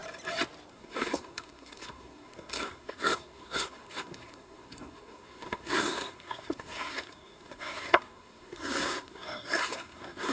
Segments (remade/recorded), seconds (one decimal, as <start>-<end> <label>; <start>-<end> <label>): 0.0-0.7 recorded; 0.7-10.3 remade